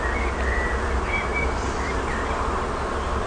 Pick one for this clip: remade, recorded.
recorded